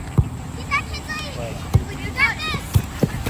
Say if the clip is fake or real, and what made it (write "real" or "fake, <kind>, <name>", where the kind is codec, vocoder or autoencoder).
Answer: real